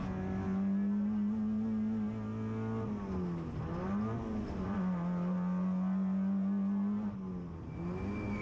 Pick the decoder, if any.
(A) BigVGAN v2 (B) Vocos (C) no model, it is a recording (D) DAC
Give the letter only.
C